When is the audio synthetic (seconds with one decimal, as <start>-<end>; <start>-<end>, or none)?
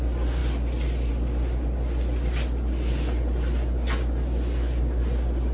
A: none